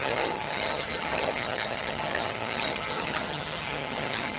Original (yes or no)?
no